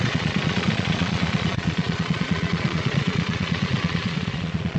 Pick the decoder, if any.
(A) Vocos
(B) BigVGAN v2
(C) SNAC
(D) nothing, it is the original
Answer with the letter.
A